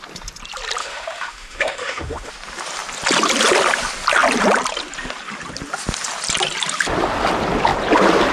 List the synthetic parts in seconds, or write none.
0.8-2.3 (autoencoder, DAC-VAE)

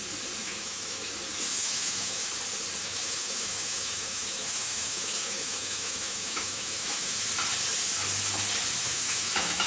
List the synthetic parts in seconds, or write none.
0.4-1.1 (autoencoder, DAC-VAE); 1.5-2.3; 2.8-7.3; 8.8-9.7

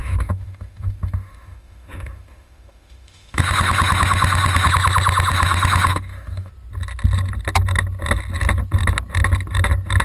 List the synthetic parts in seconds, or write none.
0.0-4.7 (autoencoder, DAC-VAE); 5.3-6.5

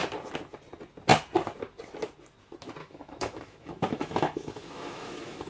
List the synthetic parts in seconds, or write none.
2.8-5.5 (autoencoder, DAC-VAE)